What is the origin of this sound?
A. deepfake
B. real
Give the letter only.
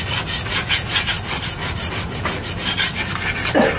B